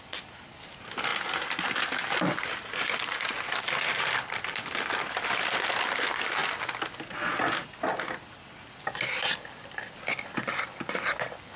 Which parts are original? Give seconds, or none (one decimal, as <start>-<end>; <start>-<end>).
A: 0.0-11.6